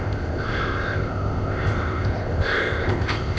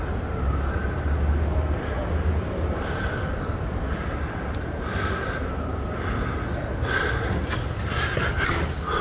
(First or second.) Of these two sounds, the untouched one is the second